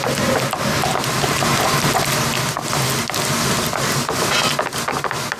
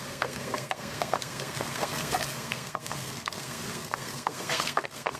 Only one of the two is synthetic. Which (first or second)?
second